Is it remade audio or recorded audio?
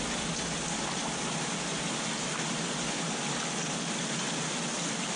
recorded